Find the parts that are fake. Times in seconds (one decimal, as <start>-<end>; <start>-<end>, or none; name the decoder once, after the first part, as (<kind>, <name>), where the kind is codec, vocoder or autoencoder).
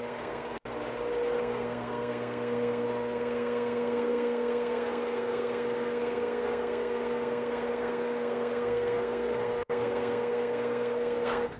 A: 0.0-0.6 (codec, SNAC); 1.4-11.6